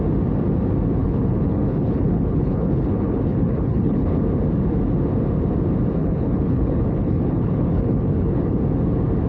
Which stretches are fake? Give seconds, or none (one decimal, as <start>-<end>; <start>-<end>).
1.0-4.2; 6.0-8.6